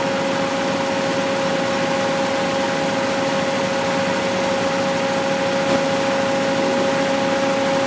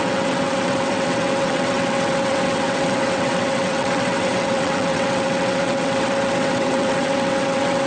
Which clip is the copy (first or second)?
second